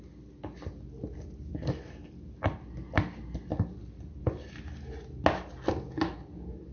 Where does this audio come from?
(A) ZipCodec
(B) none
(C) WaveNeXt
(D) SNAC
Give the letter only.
B